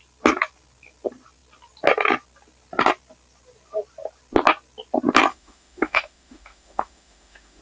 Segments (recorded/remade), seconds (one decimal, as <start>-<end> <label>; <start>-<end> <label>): 0.0-5.3 recorded; 5.3-7.6 remade